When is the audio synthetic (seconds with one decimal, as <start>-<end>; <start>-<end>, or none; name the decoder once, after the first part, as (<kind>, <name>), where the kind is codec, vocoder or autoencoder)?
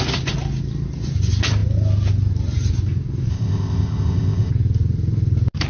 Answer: 3.3-4.5 (codec, ZipCodec)